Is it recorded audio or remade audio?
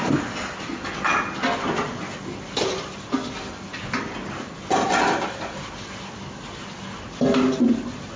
recorded